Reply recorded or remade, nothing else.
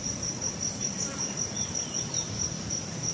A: remade